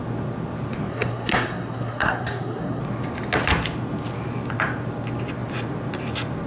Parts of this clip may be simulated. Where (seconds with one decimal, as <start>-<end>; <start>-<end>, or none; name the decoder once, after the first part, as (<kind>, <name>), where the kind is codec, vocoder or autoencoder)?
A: 0.9-2.8 (codec, SNAC)